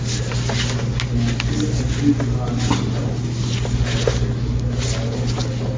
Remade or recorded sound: recorded